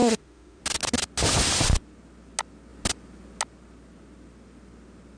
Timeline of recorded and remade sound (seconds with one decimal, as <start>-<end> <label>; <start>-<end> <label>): 0.0-0.6 remade; 0.6-5.2 recorded